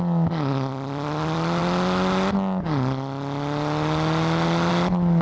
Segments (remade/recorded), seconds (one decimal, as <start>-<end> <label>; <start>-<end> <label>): 0.0-5.2 recorded